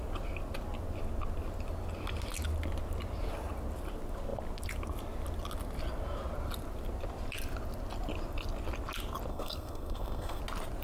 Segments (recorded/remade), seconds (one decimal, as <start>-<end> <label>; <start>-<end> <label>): 0.0-9.3 recorded; 9.3-10.4 remade; 10.4-10.8 recorded